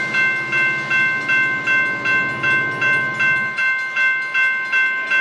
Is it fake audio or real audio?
real